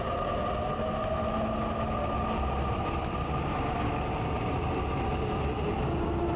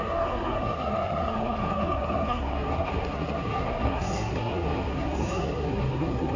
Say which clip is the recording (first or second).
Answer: first